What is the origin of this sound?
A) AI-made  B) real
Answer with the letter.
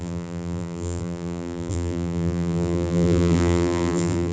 A